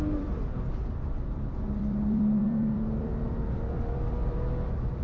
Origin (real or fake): fake